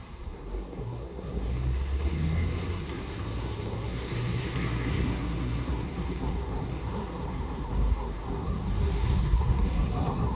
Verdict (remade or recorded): remade